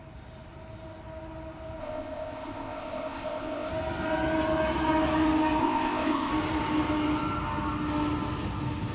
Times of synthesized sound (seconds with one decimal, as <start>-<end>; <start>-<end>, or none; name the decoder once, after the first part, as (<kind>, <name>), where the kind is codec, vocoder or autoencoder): 1.8-3.7 (codec, ZipCodec); 5.6-6.3

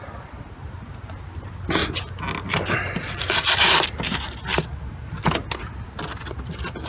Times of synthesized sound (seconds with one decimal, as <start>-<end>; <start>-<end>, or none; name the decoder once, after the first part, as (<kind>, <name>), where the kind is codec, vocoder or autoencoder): none

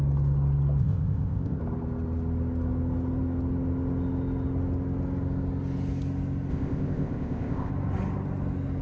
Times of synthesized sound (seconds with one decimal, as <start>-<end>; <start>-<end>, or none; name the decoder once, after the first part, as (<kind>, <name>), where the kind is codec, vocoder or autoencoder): 0.8-1.6 (codec, ZipCodec); 6.5-7.7

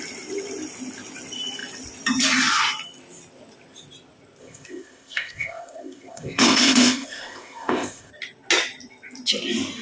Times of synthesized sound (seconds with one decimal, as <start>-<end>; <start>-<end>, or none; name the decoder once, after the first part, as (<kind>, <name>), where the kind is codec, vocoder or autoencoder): 4.4-8.1 (codec, ZipCodec)

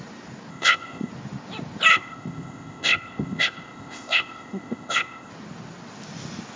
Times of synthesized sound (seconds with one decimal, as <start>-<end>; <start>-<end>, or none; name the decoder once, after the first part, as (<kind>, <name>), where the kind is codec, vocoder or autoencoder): 0.5-1.1 (codec, ZipCodec); 1.9-5.3

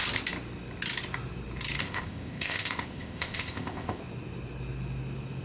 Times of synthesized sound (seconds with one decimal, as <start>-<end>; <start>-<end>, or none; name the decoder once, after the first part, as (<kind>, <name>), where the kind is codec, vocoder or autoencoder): 1.8-4.0 (codec, ZipCodec)